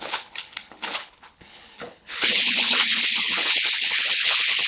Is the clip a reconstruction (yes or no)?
yes